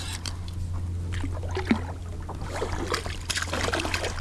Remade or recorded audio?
recorded